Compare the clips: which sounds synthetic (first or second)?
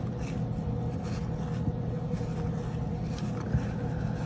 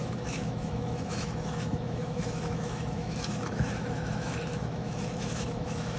second